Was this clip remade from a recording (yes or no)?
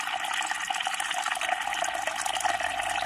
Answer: no